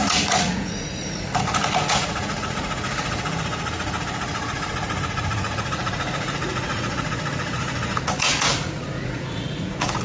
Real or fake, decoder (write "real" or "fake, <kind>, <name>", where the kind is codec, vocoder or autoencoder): fake, vocoder, Vocos